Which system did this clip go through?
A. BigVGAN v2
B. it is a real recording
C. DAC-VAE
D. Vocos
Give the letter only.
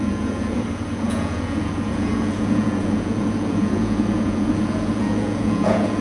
D